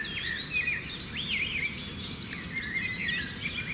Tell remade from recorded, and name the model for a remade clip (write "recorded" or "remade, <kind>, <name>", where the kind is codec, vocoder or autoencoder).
recorded